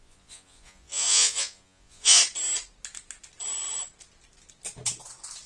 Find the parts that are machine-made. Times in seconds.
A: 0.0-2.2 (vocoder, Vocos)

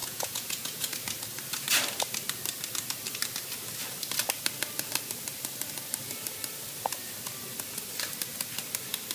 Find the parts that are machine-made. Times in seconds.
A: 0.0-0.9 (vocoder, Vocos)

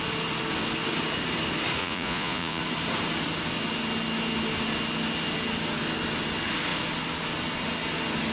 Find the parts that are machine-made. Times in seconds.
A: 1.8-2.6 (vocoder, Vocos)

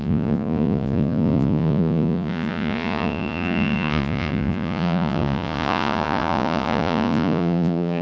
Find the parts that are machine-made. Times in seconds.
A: 0.0-8.0 (vocoder, Vocos)

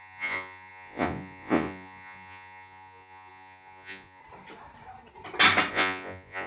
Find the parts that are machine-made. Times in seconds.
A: 0.0-4.2 (vocoder, Vocos); 5.7-6.5

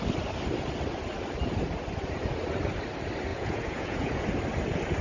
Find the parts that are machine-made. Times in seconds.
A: 3.3-4.2 (vocoder, Vocos)

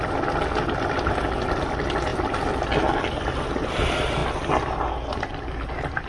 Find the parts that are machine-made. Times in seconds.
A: none